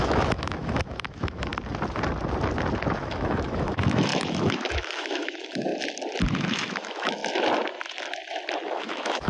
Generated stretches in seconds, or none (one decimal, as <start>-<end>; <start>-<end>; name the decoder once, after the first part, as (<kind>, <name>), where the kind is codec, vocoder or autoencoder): 0.0-1.5 (autoencoder, DAC-VAE); 3.0-5.7; 6.3-7.2; 8.7-9.3